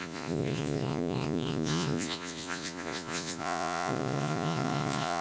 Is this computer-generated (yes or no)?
yes